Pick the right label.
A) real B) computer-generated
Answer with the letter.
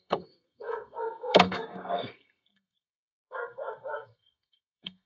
B